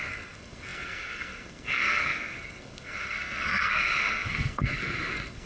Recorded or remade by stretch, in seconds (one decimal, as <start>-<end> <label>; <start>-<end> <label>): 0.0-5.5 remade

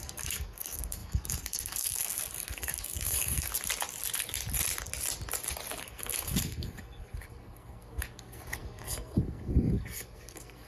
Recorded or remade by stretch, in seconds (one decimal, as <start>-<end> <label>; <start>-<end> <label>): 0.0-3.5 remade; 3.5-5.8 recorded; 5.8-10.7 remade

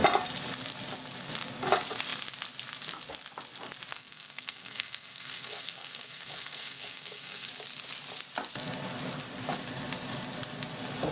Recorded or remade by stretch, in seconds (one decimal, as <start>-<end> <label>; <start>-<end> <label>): 0.0-3.9 recorded; 3.9-7.5 remade; 7.5-11.1 recorded